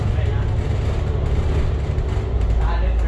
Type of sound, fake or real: real